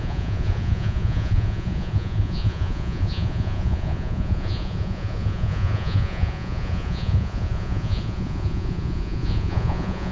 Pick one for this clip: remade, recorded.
remade